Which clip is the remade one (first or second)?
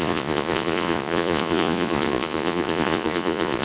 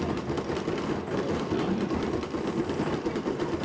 first